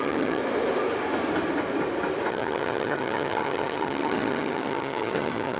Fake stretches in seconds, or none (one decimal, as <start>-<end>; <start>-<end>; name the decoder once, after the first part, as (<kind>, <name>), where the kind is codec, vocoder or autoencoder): 0.0-0.4 (vocoder, HiFi-GAN); 2.3-5.6